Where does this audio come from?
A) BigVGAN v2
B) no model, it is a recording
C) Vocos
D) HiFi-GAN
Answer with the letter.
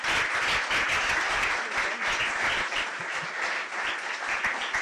B